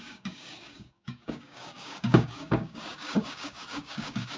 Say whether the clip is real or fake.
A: fake